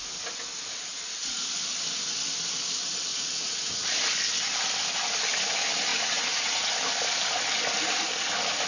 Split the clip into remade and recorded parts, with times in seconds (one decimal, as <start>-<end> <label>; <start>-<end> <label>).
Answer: 0.0-3.1 recorded; 3.1-3.7 remade; 3.7-5.9 recorded; 5.9-6.7 remade; 6.7-8.7 recorded

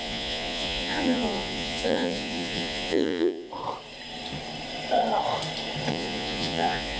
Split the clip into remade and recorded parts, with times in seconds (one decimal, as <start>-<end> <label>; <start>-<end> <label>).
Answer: 0.0-3.5 remade; 3.5-5.9 recorded; 5.9-7.0 remade